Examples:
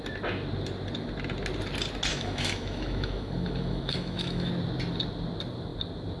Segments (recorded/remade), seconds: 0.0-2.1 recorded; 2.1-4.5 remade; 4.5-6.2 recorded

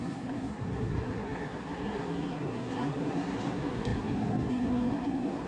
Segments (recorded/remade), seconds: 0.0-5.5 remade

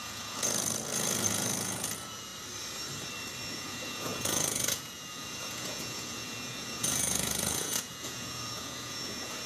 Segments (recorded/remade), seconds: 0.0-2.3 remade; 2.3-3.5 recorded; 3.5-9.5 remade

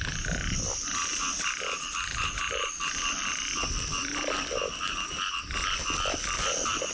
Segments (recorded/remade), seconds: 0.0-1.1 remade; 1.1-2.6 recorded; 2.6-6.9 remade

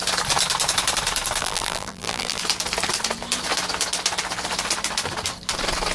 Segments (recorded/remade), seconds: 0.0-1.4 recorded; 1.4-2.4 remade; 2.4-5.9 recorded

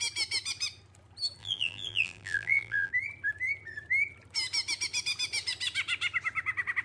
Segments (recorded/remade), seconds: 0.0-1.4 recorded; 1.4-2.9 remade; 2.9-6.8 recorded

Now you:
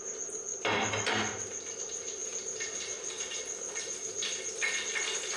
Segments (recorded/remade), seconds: 0.0-0.5 remade; 0.5-1.7 recorded; 1.7-2.2 remade; 2.2-5.4 recorded

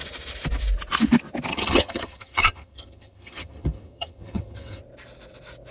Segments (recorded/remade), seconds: 0.0-1.5 recorded; 1.5-4.8 remade; 4.8-5.7 recorded